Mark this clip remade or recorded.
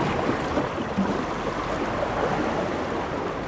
recorded